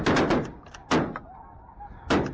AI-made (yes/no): no